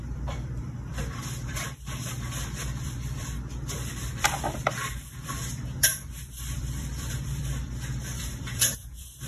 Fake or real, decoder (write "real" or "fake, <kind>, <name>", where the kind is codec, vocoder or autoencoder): fake, vocoder, BigVGAN v2